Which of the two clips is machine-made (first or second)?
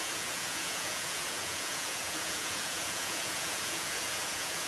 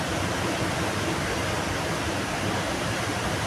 first